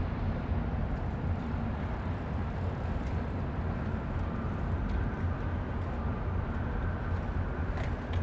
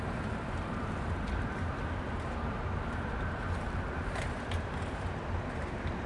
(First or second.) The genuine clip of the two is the first